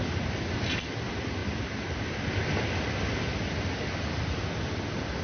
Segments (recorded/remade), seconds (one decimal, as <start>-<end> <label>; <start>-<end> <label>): 0.0-5.2 recorded

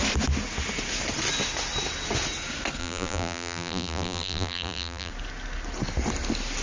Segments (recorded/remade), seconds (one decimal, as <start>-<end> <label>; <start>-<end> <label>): 0.0-2.8 recorded; 2.8-5.1 remade; 5.1-6.6 recorded

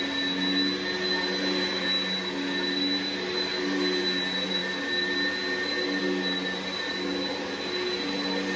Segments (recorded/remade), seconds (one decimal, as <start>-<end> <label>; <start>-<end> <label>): 0.0-8.6 recorded